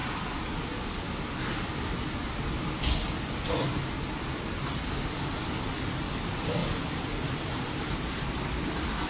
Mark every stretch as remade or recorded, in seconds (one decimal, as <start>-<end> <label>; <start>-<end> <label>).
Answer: 0.0-9.1 recorded